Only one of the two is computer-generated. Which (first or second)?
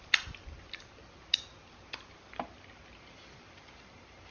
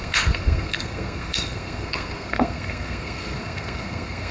second